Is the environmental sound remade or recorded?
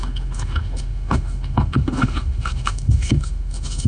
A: remade